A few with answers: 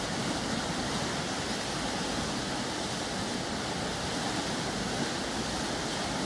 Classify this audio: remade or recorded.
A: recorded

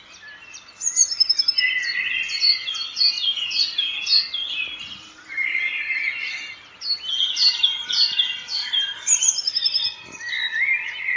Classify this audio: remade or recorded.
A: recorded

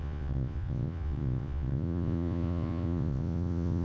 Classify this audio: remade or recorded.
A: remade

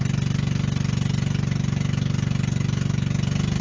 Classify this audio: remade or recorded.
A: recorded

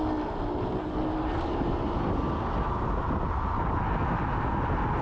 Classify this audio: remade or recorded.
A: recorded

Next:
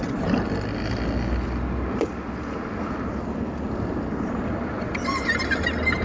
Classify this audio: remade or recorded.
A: recorded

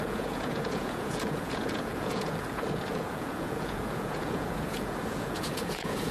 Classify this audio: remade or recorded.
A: remade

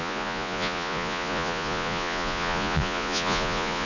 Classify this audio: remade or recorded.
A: remade